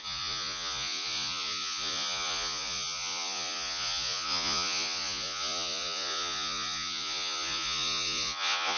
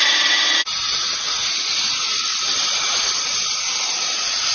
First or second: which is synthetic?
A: first